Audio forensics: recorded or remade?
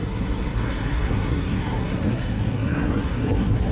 remade